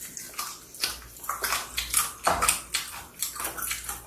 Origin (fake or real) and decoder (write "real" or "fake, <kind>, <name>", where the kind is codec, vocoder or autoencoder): real